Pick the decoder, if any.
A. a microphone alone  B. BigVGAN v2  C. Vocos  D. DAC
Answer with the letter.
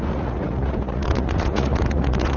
C